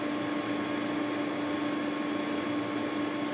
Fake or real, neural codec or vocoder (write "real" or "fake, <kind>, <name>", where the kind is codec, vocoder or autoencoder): real